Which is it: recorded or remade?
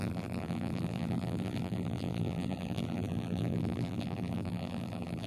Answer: remade